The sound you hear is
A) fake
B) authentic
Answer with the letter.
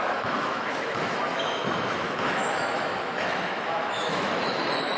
A